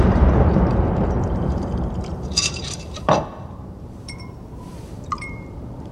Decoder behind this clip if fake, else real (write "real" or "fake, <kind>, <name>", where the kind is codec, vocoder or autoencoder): fake, vocoder, BigVGAN v2